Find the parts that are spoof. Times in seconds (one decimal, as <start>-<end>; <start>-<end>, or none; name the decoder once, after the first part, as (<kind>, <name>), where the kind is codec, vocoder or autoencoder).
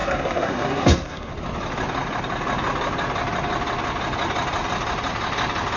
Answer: 0.0-1.3 (codec, SNAC)